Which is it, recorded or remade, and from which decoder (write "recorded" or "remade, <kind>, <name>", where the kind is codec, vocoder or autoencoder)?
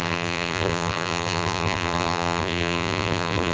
remade, vocoder, BigVGAN v2